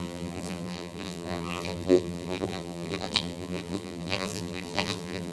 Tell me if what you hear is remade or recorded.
remade